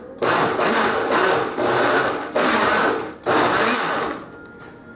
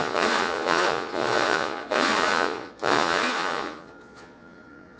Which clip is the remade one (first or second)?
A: second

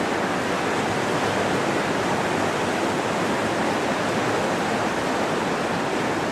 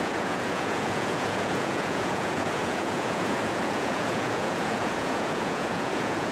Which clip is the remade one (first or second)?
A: second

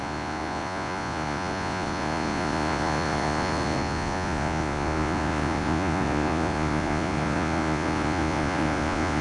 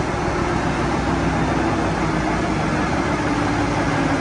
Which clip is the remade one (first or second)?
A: first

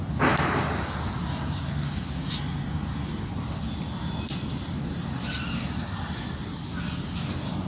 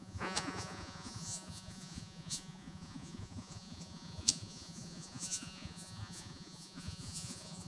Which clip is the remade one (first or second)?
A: second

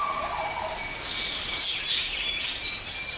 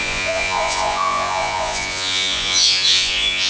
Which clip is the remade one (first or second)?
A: second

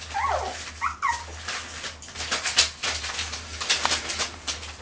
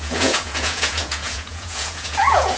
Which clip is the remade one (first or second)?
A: second